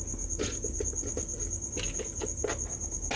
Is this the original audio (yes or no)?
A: yes